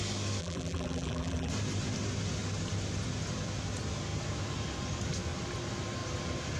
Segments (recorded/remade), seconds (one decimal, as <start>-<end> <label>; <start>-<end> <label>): 0.0-0.4 recorded; 0.4-1.5 remade; 1.5-6.6 recorded